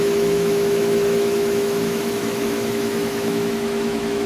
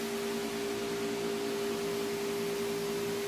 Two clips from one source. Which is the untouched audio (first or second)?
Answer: second